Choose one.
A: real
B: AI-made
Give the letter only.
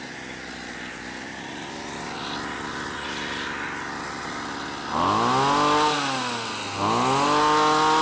A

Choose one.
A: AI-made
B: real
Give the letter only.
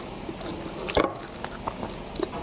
B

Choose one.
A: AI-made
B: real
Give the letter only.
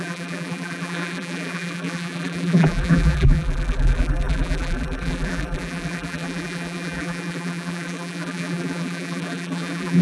A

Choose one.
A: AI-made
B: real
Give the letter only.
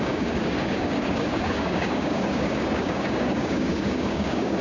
A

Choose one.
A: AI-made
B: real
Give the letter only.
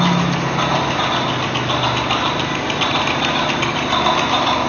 B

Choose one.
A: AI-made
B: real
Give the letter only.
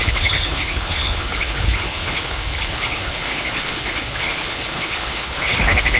A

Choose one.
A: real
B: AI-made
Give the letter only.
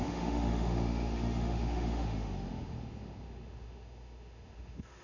B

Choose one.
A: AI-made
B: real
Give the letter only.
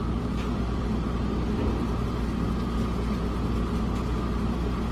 B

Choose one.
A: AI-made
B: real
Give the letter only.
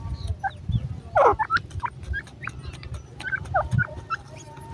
B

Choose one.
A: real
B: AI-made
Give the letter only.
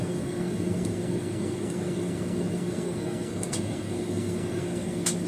B